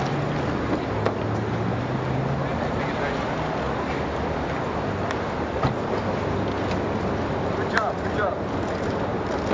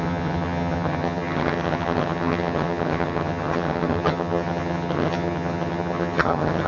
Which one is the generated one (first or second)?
second